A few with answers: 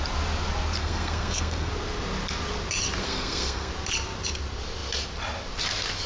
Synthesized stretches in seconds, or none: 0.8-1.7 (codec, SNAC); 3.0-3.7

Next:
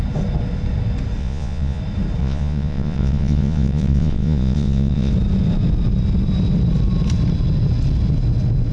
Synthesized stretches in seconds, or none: 1.2-1.8 (vocoder, Vocos); 2.2-5.1